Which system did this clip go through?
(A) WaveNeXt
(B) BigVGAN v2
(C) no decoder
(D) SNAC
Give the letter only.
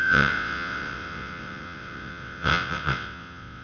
A